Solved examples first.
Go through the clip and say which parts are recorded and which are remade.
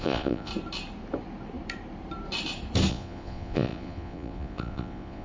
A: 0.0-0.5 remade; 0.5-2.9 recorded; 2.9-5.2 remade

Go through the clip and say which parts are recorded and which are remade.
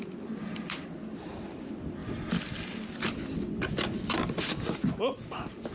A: 0.0-5.7 recorded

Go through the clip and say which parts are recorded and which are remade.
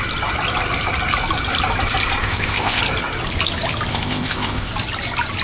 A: 0.0-2.2 recorded; 2.2-2.8 remade; 2.8-3.9 recorded; 3.9-4.7 remade; 4.7-5.4 recorded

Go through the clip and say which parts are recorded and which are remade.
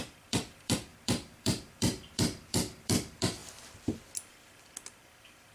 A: 0.0-3.4 remade; 3.4-5.0 recorded; 5.0-5.5 remade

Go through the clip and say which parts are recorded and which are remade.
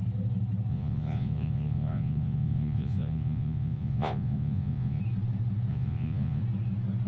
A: 0.0-0.7 recorded; 0.7-5.0 remade; 5.0-5.7 recorded; 5.7-6.4 remade; 6.4-7.1 recorded